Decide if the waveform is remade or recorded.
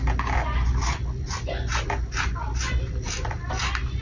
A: recorded